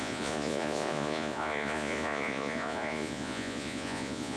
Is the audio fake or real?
fake